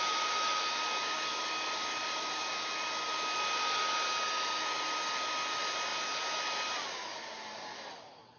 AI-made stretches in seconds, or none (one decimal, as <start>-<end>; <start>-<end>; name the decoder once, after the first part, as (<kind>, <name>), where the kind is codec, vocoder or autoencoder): 5.9-6.4 (vocoder, BigVGAN v2)